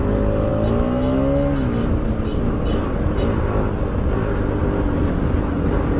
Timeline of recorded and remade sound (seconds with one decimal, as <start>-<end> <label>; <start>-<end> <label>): 0.0-6.0 recorded